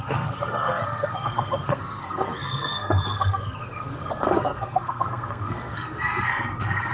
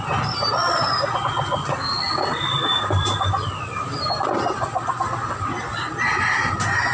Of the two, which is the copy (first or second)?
first